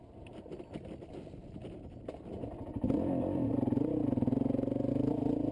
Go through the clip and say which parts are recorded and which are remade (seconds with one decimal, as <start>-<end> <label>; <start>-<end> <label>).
0.0-5.5 recorded